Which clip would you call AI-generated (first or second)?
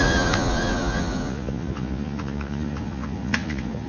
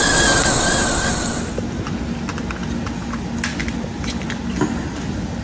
first